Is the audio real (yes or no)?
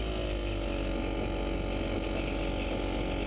yes